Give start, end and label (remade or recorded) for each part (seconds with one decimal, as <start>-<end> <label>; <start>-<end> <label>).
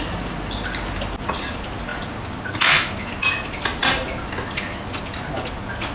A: 0.0-5.9 recorded